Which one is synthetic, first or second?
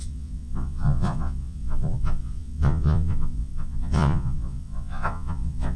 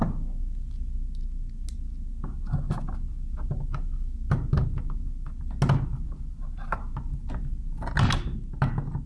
first